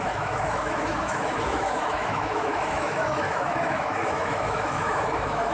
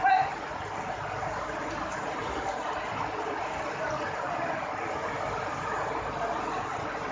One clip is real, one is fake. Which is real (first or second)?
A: second